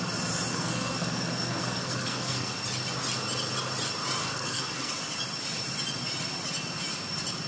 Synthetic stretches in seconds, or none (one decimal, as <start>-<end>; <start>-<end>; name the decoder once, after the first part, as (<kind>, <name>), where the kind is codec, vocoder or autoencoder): 0.5-2.5 (codec, SNAC); 4.2-4.9